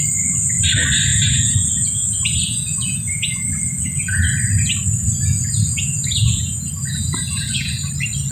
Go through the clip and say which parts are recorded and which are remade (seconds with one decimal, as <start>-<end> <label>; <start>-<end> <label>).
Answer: 0.0-1.1 recorded; 1.1-4.2 remade; 4.2-5.0 recorded; 5.0-7.9 remade; 7.9-8.3 recorded